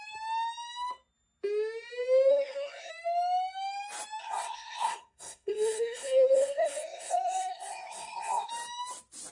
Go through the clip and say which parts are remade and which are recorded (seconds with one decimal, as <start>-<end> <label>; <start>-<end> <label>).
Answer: 0.0-2.3 recorded; 2.3-2.9 remade; 2.9-4.2 recorded; 4.2-8.5 remade; 8.5-9.3 recorded